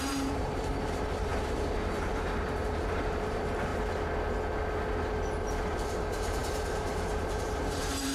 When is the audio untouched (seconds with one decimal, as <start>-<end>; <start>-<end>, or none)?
3.7-5.6